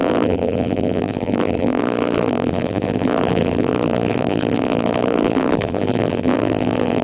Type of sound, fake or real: fake